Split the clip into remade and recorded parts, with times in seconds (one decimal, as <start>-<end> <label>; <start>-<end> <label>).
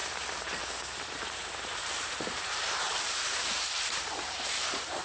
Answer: 0.0-1.8 recorded; 1.8-5.0 remade